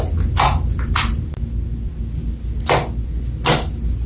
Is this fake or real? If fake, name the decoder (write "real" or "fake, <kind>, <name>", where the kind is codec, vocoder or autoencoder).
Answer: real